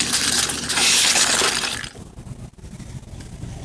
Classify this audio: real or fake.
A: real